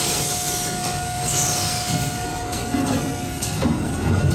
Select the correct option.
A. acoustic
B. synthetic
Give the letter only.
B